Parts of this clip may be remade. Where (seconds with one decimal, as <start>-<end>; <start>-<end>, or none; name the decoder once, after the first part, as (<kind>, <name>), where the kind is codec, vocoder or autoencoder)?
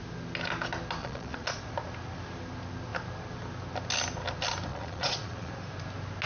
1.0-1.7 (vocoder, Vocos); 4.7-5.5